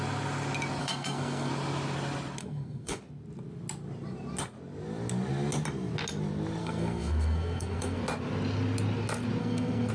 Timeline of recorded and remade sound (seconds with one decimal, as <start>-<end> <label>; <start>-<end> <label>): 0.0-0.8 recorded; 0.8-1.5 remade; 1.5-2.4 recorded; 2.4-3.0 remade; 3.0-6.6 recorded; 6.6-8.0 remade; 8.0-9.4 recorded; 9.4-9.9 remade